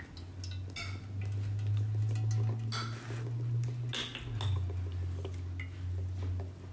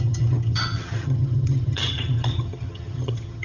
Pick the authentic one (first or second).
first